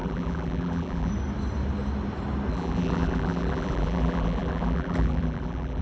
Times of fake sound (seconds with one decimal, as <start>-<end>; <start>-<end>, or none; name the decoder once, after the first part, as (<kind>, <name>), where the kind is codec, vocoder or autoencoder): 0.0-1.1 (vocoder, BigVGAN v2); 2.5-5.8